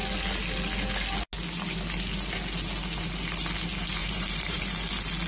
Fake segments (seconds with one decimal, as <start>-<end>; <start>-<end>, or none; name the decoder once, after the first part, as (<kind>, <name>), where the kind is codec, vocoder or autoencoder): 4.0-4.6 (vocoder, BigVGAN v2)